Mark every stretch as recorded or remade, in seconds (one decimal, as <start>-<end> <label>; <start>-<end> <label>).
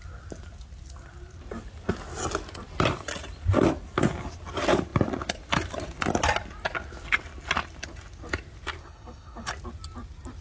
0.0-8.8 recorded; 8.8-9.5 remade; 9.5-10.4 recorded